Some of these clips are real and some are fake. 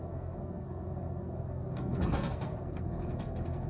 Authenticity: fake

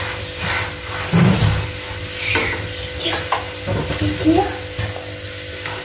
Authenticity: real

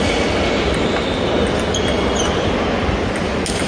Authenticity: real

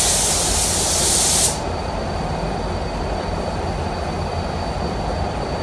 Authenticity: real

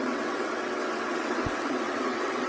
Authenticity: fake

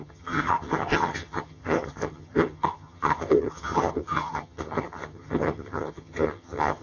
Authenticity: fake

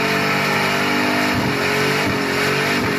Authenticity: real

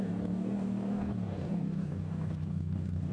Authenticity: fake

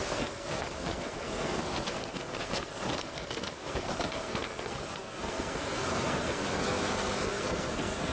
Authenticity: fake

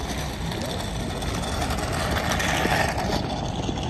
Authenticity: real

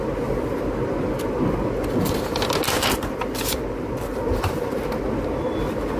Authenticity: real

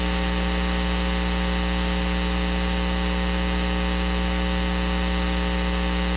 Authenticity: real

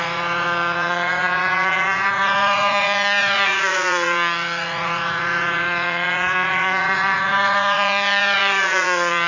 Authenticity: fake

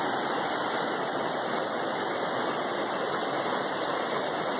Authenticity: real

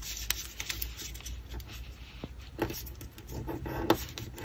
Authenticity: real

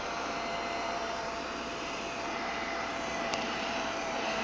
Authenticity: fake